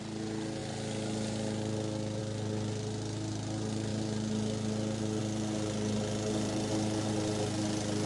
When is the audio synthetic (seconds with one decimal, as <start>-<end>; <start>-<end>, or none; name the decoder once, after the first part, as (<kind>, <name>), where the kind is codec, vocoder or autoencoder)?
none